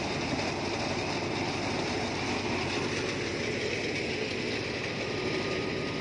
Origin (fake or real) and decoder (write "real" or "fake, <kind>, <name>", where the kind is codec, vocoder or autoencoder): real